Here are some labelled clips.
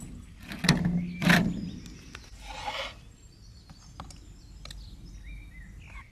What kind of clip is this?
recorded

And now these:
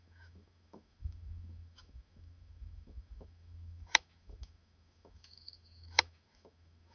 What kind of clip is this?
remade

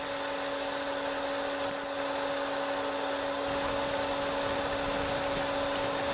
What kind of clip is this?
recorded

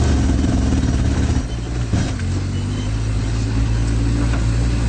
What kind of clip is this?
recorded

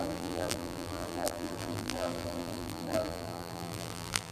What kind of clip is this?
remade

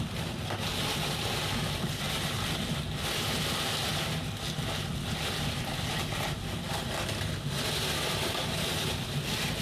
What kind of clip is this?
recorded